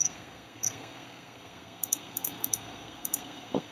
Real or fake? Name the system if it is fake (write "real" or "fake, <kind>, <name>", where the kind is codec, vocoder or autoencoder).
fake, codec, SNAC